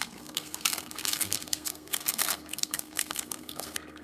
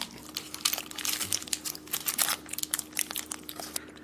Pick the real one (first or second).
second